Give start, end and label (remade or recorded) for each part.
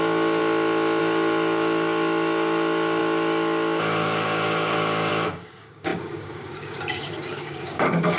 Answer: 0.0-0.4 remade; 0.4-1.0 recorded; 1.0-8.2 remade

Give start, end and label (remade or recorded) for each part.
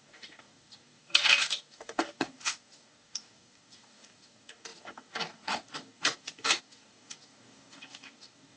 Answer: 0.0-8.6 remade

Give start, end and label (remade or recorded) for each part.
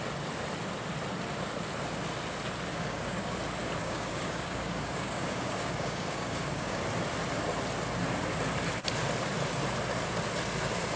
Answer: 0.0-2.7 recorded; 2.7-3.3 remade; 3.3-3.8 recorded; 3.8-6.8 remade; 6.8-11.0 recorded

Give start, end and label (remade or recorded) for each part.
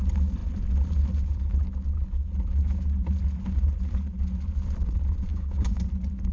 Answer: 0.0-5.3 recorded; 5.3-5.8 remade; 5.8-6.3 recorded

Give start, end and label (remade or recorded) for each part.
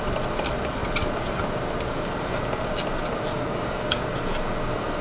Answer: 0.0-3.3 recorded; 3.3-4.1 remade; 4.1-5.0 recorded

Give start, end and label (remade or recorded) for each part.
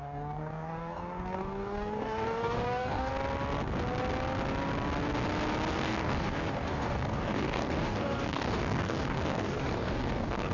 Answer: 0.0-3.1 remade; 3.1-5.7 recorded; 5.7-10.5 remade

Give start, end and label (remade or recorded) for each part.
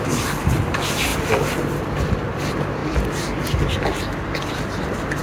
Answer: 0.0-5.2 recorded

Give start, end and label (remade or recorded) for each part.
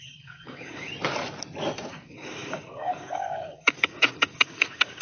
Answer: 0.0-0.9 remade; 0.9-1.9 recorded; 1.9-5.0 remade